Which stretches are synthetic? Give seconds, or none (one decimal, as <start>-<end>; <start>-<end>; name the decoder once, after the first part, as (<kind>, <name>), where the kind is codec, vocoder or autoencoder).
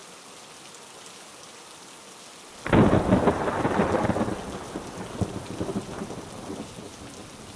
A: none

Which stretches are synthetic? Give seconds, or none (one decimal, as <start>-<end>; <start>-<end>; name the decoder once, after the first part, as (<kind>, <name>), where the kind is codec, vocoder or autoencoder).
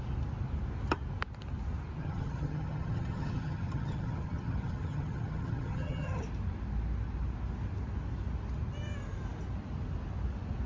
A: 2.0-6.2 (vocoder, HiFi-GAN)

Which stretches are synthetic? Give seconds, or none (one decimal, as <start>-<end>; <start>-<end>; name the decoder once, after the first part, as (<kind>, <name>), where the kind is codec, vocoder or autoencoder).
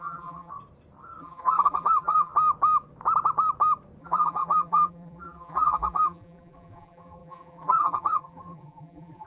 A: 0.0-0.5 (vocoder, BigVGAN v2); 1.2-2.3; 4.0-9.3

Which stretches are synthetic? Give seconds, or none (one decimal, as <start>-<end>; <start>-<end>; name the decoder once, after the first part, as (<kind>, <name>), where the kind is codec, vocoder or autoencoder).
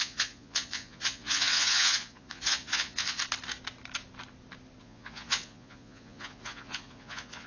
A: 0.0-3.2 (vocoder, Vocos); 4.8-7.5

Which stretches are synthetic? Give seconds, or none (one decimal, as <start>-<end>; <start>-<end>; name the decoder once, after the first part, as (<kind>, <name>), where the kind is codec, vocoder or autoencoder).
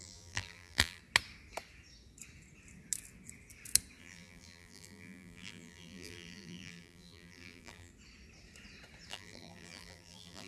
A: 0.0-1.0 (vocoder, BigVGAN v2); 4.0-7.9; 9.1-10.5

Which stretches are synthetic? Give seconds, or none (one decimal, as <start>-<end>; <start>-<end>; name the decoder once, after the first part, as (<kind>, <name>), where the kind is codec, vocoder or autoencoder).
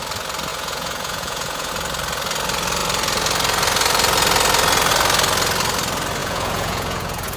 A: 0.5-1.7 (vocoder, Vocos); 6.2-7.4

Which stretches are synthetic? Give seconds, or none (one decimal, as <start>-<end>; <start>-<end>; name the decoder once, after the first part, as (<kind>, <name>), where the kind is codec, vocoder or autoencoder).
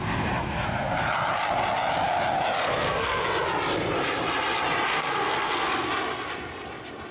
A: 2.6-3.2 (codec, SNAC); 4.9-5.9